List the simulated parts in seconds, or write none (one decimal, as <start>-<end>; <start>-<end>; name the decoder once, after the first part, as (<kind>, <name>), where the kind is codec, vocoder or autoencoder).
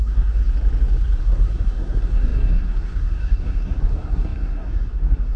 0.0-0.4 (codec, SNAC); 1.2-5.4